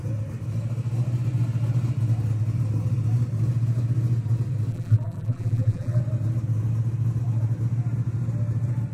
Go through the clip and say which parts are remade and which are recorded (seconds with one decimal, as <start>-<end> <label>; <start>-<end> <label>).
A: 0.0-4.7 recorded; 4.7-6.0 remade; 6.0-8.9 recorded